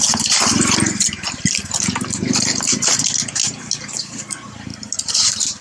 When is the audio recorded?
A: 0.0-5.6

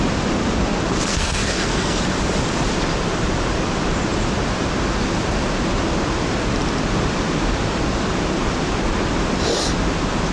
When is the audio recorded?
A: 0.0-1.1; 2.0-10.3

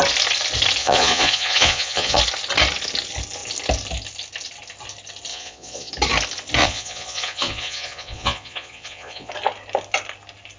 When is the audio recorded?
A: 0.0-0.8; 2.2-5.3; 5.9-6.6; 9.3-10.6

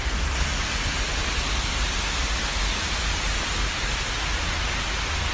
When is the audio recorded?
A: 0.0-5.3

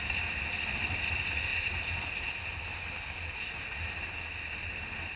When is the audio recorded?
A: 0.0-5.2

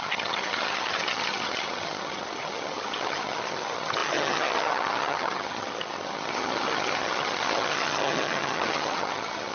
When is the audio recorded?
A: none

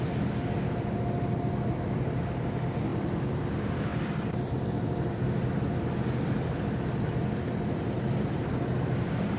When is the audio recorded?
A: 0.0-2.9; 3.5-3.9; 8.5-9.4